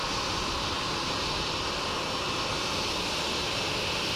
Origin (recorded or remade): recorded